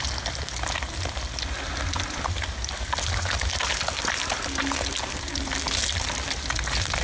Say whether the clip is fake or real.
real